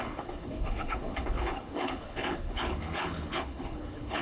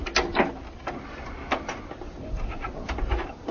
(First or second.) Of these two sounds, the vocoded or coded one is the first